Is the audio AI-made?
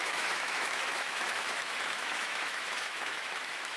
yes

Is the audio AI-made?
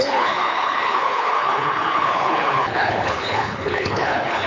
yes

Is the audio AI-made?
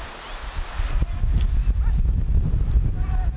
no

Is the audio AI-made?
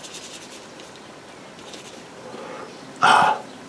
no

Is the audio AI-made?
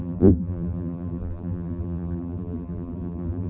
yes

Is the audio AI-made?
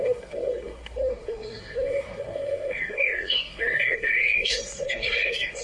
yes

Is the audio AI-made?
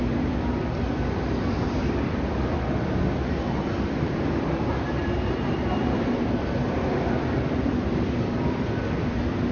yes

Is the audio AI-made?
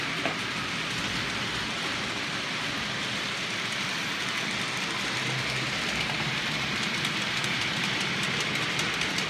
no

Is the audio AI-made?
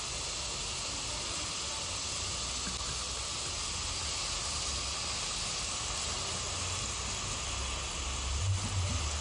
no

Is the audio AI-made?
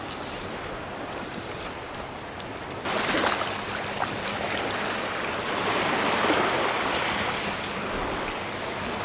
no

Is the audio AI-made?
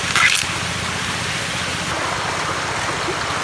no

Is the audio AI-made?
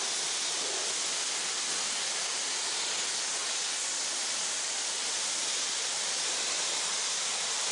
no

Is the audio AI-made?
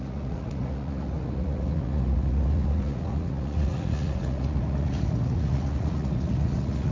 yes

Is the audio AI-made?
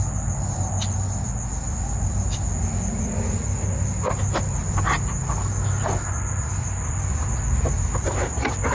no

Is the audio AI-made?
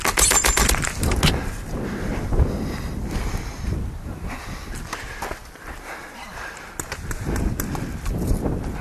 no